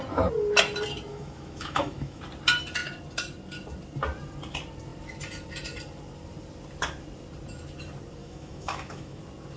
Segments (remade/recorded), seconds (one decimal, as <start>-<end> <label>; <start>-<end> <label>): 0.0-1.1 recorded; 1.1-2.2 remade; 2.2-8.2 recorded; 8.2-9.2 remade; 9.2-9.6 recorded